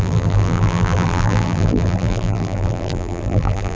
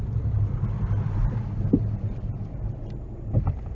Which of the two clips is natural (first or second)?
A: second